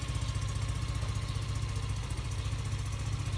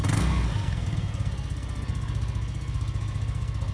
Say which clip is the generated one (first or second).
second